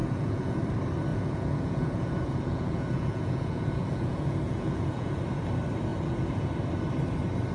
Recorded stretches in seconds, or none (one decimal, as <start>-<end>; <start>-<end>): 0.6-1.1; 5.2-5.9; 6.5-7.5